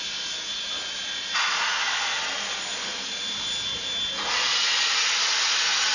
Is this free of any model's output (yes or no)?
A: yes